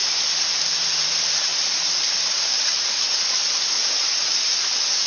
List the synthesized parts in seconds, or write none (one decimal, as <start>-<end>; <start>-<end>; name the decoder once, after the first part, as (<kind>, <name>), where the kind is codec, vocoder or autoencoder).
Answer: 0.0-0.5 (vocoder, BigVGAN v2); 1.5-3.2; 3.8-4.4